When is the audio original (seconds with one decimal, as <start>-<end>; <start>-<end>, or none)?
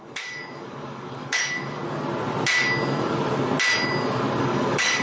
1.8-4.4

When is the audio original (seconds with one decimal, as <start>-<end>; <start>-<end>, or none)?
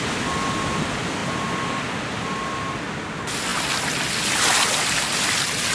0.0-5.7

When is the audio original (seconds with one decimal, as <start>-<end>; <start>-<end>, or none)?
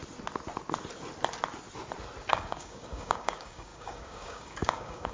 0.0-2.3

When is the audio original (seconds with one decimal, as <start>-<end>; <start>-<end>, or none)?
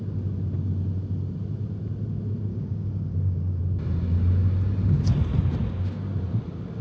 0.0-2.5; 3.6-6.8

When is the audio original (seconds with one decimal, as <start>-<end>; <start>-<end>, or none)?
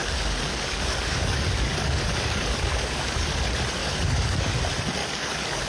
3.4-3.8; 4.6-5.0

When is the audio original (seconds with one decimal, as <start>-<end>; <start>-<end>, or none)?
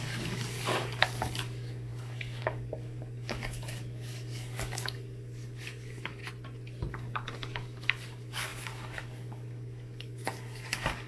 6.2-6.9